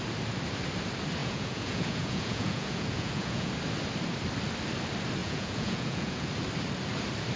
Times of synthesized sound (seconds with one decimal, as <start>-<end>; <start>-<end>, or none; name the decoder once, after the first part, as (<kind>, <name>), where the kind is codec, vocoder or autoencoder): 1.2-3.5 (vocoder, Vocos); 5.2-6.3

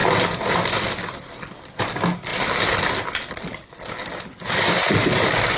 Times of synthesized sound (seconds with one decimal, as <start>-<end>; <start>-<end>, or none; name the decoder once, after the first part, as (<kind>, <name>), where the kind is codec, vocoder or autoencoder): 2.3-3.9 (vocoder, BigVGAN v2)

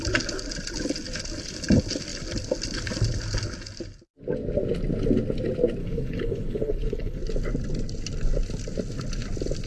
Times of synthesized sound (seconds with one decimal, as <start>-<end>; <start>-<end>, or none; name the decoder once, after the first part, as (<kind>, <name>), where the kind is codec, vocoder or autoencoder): 5.8-7.2 (codec, HILCodec)